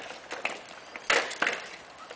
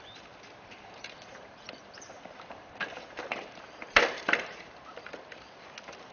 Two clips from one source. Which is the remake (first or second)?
second